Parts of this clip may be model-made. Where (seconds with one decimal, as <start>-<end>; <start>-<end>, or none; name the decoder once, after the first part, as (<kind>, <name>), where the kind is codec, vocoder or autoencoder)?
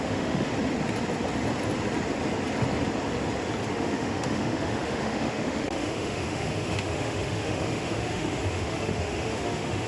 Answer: 0.0-0.5 (autoencoder, DAC-VAE); 3.7-9.9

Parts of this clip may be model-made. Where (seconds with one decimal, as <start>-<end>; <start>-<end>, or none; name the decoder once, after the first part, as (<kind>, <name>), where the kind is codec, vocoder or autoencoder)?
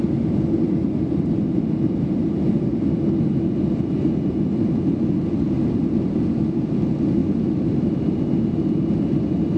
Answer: none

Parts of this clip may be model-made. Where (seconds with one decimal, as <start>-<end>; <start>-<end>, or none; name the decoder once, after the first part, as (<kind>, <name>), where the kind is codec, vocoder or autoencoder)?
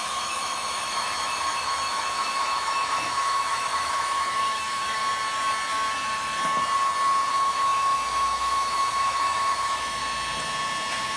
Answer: 0.0-5.0 (autoencoder, DAC-VAE); 7.3-10.0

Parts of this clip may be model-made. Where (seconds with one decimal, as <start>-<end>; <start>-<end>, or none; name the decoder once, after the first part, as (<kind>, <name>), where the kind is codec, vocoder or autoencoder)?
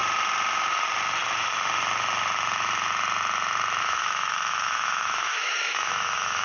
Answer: 3.8-6.4 (autoencoder, DAC-VAE)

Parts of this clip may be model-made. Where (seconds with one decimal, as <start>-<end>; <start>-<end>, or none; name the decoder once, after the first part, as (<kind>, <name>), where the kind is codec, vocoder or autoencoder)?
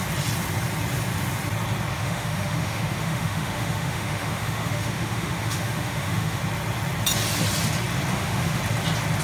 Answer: 1.9-6.4 (autoencoder, DAC-VAE); 8.1-8.6